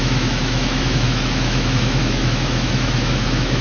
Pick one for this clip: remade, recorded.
remade